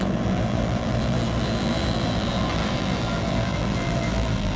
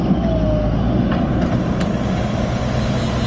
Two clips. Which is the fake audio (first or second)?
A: first